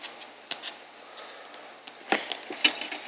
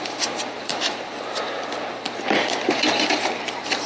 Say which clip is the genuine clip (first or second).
first